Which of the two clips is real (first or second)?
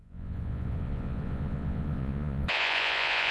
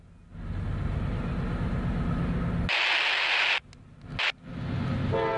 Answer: second